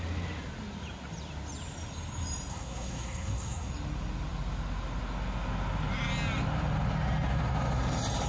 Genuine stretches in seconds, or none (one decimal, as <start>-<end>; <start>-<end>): 0.0-2.5; 3.7-8.3

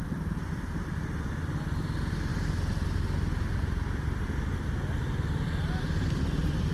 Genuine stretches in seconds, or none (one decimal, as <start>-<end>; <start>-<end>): none

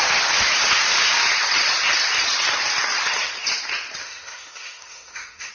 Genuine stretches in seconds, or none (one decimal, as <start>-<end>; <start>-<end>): 0.0-4.0

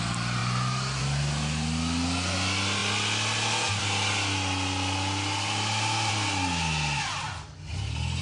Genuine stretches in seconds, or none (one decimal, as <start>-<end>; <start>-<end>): 0.0-8.2